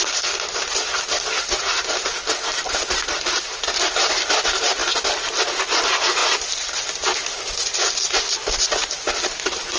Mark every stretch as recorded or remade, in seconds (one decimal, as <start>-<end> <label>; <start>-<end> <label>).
0.0-4.8 recorded; 4.8-5.8 remade; 5.8-9.8 recorded